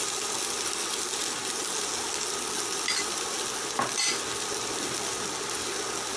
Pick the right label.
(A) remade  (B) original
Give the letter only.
B